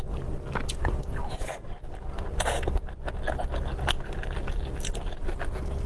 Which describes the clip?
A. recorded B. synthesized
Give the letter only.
A